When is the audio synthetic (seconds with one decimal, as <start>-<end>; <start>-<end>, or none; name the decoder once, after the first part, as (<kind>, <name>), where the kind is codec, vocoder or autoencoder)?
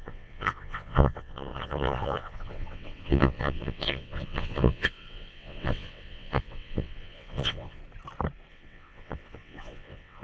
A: 0.0-7.8 (vocoder, WaveNeXt); 8.5-10.2